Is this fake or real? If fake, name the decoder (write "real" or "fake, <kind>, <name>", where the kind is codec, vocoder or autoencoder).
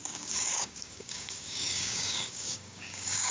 fake, codec, DAC